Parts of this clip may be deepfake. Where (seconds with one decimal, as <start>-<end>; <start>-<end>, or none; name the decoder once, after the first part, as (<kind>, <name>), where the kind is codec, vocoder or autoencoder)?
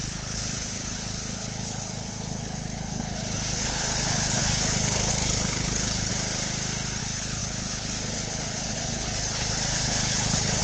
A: 0.0-6.1 (codec, HILCodec); 7.0-10.6